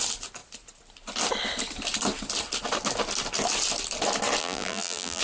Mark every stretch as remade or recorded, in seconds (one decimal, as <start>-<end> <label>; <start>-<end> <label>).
0.0-4.4 recorded; 4.4-5.2 remade